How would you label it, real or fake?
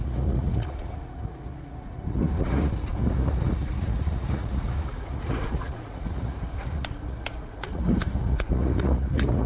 fake